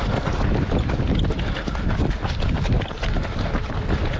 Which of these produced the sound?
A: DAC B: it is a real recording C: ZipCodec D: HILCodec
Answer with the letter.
B